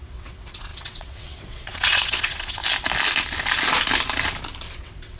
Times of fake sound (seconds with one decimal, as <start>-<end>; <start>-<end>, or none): 0.0-2.6; 4.8-5.2